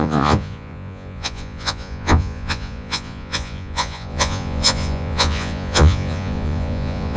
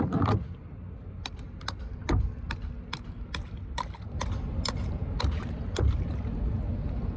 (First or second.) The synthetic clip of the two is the first